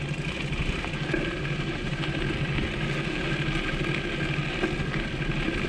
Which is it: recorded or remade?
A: recorded